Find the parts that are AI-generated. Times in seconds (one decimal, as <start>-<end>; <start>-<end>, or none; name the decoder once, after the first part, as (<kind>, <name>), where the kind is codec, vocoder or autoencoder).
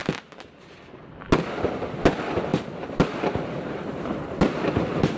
2.5-5.2 (vocoder, BigVGAN v2)